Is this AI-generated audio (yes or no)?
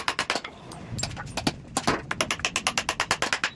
no